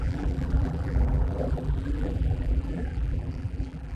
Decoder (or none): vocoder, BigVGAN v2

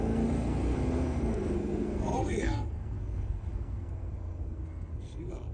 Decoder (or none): codec, SNAC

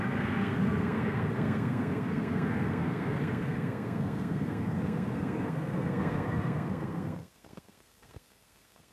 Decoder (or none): codec, SNAC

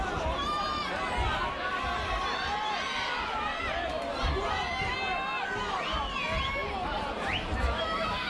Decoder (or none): none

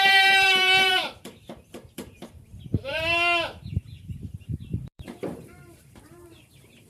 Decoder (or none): vocoder, BigVGAN v2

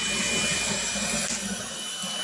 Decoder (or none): none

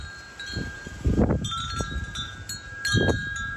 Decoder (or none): none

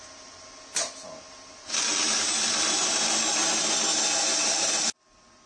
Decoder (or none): none